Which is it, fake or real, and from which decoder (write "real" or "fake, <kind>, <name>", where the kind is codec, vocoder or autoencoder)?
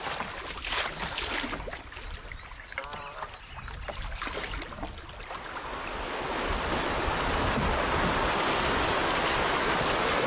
real